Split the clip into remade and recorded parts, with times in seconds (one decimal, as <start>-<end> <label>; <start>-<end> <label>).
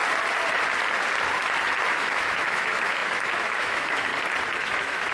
0.0-1.9 recorded; 1.9-4.1 remade; 4.1-4.6 recorded; 4.6-5.1 remade